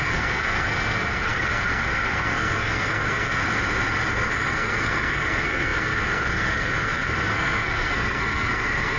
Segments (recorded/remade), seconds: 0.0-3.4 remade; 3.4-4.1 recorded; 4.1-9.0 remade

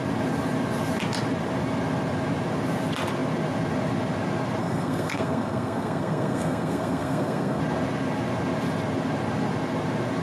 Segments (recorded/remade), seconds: 0.0-4.6 recorded; 4.6-7.6 remade; 7.6-10.2 recorded

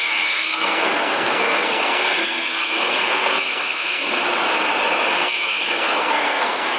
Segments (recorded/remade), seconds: 0.0-4.2 remade; 4.2-5.2 recorded; 5.2-6.8 remade